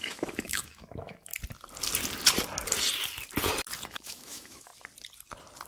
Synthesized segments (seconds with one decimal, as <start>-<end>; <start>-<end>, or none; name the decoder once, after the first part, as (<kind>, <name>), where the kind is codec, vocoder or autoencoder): 0.0-1.3 (autoencoder, DAC-VAE); 3.9-4.7